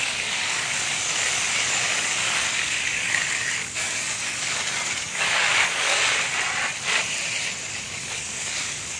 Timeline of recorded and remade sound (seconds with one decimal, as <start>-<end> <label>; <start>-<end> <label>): 0.0-6.0 remade; 6.0-7.7 recorded; 7.7-9.0 remade